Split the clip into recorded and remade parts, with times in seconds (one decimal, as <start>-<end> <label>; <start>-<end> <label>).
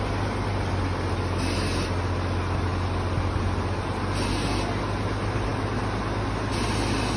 0.0-7.2 recorded